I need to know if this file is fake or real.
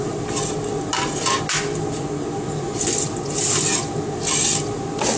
real